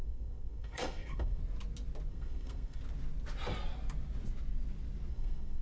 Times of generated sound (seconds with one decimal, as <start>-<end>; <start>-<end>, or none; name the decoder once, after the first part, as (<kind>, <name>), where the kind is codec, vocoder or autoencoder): 0.0-1.4 (codec, SNAC); 2.1-2.8; 5.1-5.6